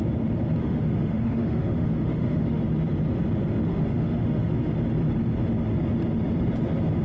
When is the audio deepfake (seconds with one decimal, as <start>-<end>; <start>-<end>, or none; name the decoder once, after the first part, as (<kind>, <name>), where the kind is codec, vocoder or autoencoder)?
0.6-2.6 (autoencoder, DAC-VAE); 3.7-4.7